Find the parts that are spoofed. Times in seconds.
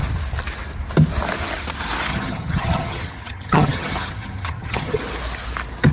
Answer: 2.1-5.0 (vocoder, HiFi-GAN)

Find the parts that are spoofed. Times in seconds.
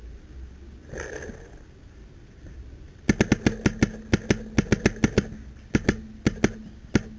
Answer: none